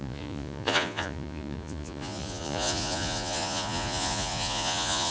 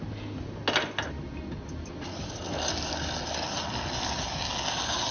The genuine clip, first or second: second